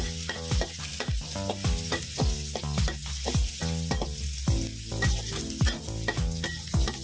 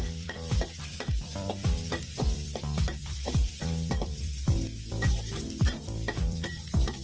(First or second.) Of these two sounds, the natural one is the first